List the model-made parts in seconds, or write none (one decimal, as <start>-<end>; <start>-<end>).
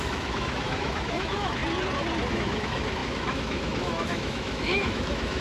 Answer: 0.0-1.6; 2.3-5.4